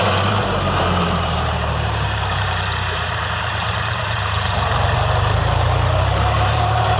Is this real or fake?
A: fake